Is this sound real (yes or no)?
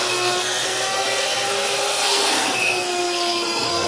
no